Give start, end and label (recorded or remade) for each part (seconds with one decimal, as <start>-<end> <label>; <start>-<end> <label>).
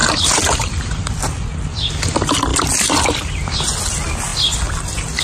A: 0.0-5.2 recorded